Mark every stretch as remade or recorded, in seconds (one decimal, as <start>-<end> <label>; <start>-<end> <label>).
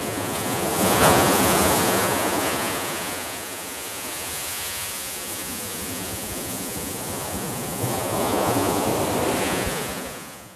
0.0-8.9 remade; 8.9-9.4 recorded; 9.4-10.6 remade